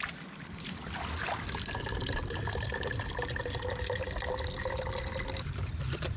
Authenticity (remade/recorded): recorded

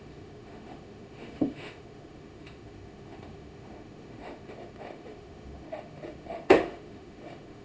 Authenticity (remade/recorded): remade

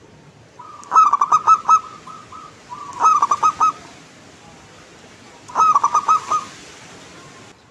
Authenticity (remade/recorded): recorded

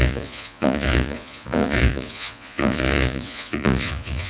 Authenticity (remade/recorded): remade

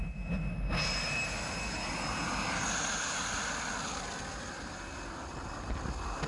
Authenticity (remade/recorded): recorded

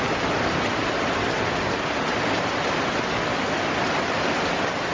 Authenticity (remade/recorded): recorded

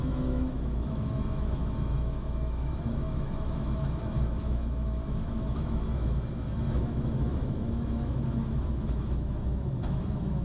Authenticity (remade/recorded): remade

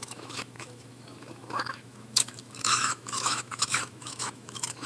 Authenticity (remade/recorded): remade